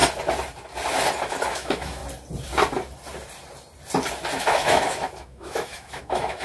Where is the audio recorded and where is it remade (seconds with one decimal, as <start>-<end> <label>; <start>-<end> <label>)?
0.0-1.3 recorded; 1.3-2.0 remade; 2.0-4.4 recorded; 4.4-6.4 remade